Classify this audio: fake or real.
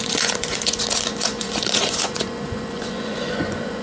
fake